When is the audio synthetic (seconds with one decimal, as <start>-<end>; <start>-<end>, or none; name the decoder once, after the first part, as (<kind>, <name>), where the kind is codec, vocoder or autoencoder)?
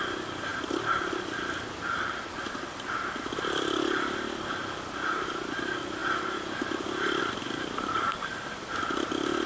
none